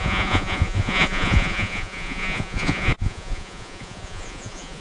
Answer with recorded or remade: remade